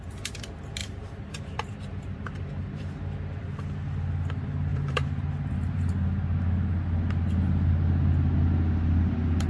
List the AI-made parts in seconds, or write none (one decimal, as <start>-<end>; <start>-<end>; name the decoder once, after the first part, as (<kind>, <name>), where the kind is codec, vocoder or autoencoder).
0.8-3.0 (vocoder, BigVGAN v2); 4.7-5.9